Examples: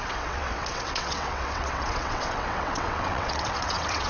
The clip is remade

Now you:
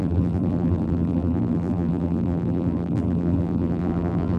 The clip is remade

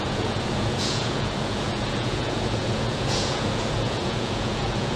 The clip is remade